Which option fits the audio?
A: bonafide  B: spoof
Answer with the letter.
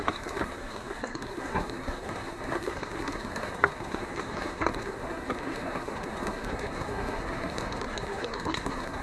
B